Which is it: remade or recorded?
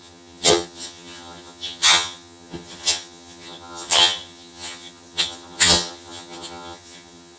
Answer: remade